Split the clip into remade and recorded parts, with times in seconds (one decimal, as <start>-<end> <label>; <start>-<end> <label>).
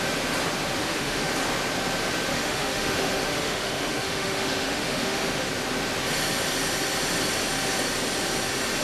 0.0-0.8 recorded; 0.8-1.3 remade; 1.3-2.3 recorded; 2.3-5.5 remade; 5.5-8.8 recorded